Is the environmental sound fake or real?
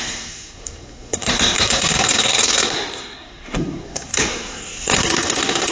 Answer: fake